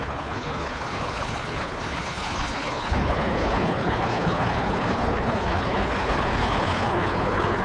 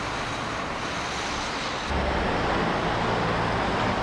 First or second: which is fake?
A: first